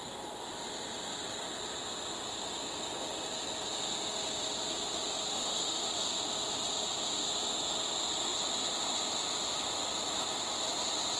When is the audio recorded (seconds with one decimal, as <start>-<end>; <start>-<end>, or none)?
0.0-5.3; 5.9-11.2